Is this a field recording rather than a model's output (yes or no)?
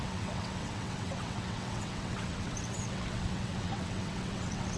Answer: no